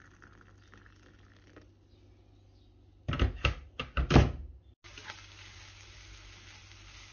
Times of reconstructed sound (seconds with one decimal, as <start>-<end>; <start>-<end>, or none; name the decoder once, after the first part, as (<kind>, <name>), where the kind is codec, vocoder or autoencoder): none